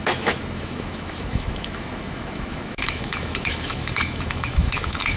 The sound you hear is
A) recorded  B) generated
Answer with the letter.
B